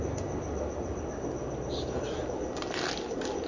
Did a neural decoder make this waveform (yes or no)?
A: no